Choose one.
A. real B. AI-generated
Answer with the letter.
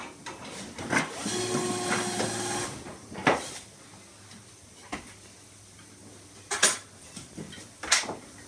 A